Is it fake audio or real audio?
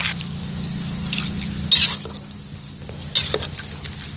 real